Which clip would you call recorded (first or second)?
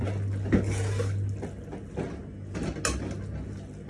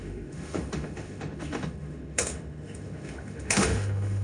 first